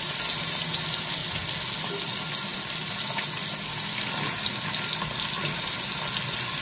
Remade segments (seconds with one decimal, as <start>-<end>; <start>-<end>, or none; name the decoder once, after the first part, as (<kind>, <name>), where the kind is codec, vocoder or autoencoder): none